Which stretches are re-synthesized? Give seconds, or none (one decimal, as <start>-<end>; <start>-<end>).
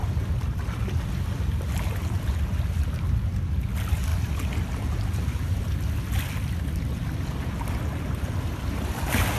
none